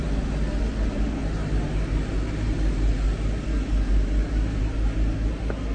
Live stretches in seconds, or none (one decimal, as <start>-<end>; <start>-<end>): 0.0-5.7